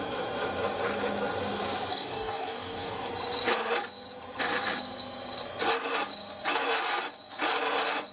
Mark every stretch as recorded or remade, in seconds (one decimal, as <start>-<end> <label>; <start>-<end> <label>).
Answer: 0.0-1.9 recorded; 1.9-3.1 remade; 3.1-8.1 recorded